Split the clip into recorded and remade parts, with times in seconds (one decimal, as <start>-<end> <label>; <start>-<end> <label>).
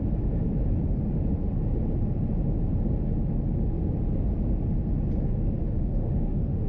0.0-5.6 recorded; 5.6-6.7 remade